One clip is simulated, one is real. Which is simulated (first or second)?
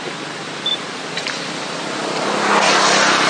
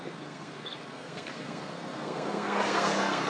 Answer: second